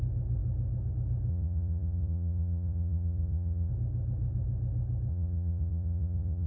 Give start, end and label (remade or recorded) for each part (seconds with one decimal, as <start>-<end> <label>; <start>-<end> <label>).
0.0-1.3 recorded; 1.3-3.7 remade; 3.7-5.1 recorded; 5.1-6.5 remade

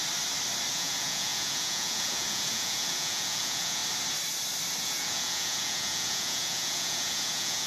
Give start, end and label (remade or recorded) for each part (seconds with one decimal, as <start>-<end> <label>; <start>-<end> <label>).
0.0-0.7 recorded; 0.7-3.8 remade; 3.8-4.8 recorded; 4.8-7.7 remade

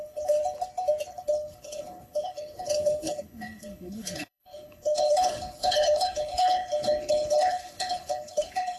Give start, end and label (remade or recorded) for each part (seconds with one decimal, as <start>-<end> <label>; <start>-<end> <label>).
0.0-0.4 remade; 0.4-1.1 recorded; 1.1-8.8 remade

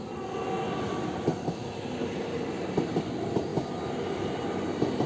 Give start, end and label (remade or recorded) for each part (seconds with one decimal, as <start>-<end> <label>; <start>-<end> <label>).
0.0-1.3 remade; 1.3-1.9 recorded; 1.9-3.5 remade; 3.5-4.3 recorded; 4.3-5.1 remade

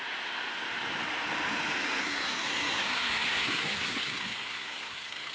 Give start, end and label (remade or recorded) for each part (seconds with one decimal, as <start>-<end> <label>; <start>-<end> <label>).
0.0-2.0 recorded; 2.0-5.3 remade